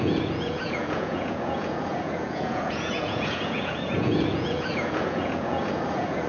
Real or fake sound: fake